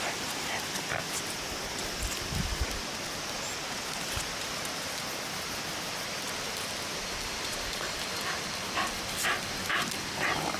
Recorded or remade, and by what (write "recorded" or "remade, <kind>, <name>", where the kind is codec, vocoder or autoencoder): recorded